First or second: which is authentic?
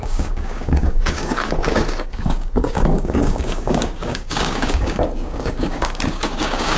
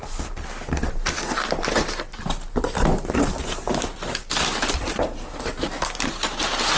second